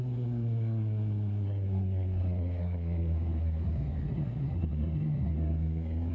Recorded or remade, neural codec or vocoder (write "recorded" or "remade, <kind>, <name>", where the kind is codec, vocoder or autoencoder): remade, codec, SNAC